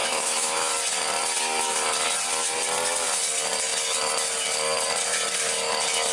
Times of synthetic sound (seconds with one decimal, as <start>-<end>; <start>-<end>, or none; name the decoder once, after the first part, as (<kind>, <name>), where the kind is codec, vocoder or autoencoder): 0.0-0.7 (autoencoder, DAC-VAE)